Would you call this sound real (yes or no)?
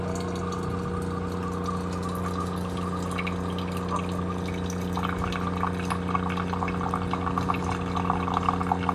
yes